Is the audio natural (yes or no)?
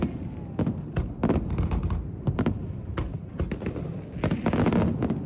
yes